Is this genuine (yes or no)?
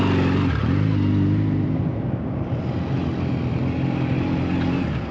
yes